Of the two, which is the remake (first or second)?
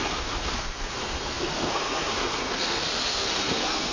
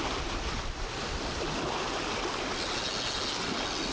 first